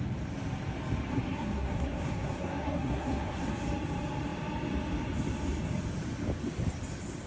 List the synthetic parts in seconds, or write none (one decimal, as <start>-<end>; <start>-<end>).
1.1-3.5